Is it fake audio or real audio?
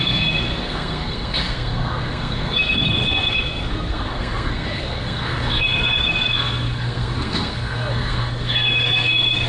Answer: fake